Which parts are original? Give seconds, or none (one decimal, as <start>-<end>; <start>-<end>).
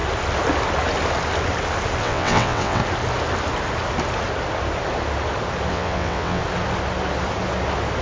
0.0-2.0; 2.8-5.7; 6.4-8.0